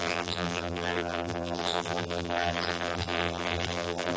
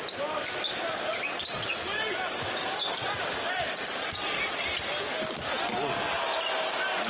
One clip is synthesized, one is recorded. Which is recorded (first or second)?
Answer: second